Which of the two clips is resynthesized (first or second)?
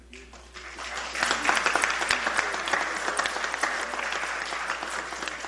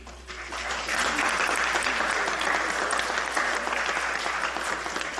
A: second